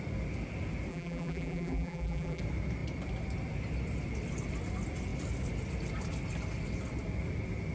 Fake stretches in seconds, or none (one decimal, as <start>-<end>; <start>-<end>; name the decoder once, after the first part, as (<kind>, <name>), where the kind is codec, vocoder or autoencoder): 0.9-2.4 (vocoder, BigVGAN v2)